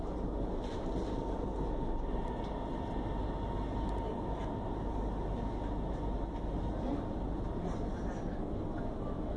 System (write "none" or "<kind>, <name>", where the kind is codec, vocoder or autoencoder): none